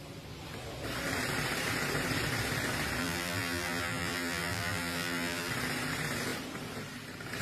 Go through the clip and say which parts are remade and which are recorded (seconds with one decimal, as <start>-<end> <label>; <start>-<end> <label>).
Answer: 0.0-3.0 recorded; 3.0-5.5 remade; 5.5-7.4 recorded